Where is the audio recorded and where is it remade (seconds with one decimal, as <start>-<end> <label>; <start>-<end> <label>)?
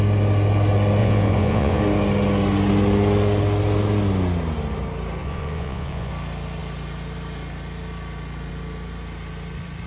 0.0-1.0 recorded; 1.0-1.8 remade; 1.8-5.2 recorded; 5.2-6.1 remade; 6.1-9.9 recorded